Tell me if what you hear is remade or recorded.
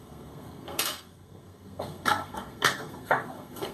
remade